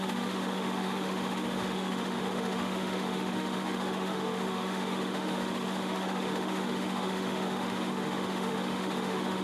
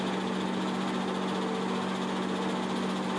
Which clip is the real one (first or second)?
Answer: second